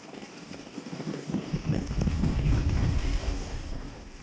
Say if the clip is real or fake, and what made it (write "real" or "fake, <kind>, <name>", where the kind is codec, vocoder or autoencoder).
fake, codec, DAC